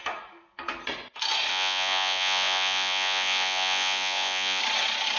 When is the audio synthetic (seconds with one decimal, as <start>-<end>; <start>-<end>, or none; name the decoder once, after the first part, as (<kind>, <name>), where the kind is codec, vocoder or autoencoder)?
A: 1.5-4.6 (vocoder, Vocos)